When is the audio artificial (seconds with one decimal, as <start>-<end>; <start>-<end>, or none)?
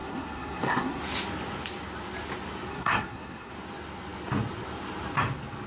0.0-1.0; 2.7-3.5